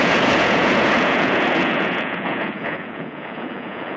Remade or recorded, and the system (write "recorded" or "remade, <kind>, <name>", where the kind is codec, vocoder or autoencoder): remade, vocoder, Vocos